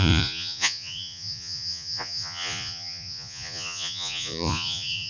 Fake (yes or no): yes